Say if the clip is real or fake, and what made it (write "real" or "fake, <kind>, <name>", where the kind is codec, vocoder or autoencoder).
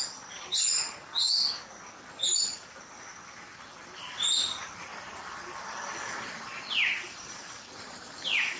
real